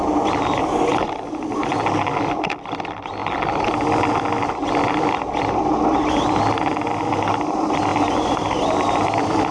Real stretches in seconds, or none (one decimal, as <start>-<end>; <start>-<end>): 0.0-9.5